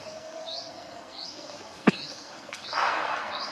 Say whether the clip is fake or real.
fake